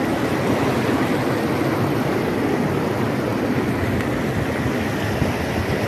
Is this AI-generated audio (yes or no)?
no